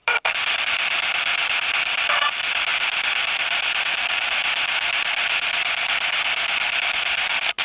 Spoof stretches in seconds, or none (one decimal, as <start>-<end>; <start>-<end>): 0.0-4.4